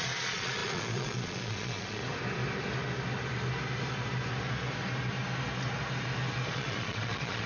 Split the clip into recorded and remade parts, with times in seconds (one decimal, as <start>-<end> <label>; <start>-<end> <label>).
0.0-2.0 remade; 2.0-6.5 recorded; 6.5-7.5 remade